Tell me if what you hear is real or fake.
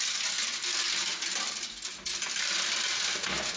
real